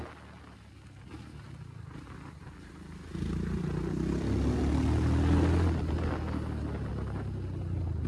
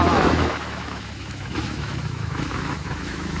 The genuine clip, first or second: first